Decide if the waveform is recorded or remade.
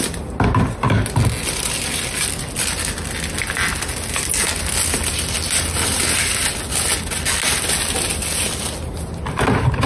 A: recorded